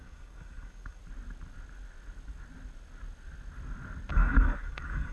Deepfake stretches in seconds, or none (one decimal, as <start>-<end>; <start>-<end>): 0.0-1.0; 4.1-5.1